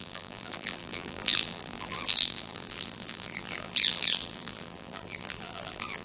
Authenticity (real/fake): fake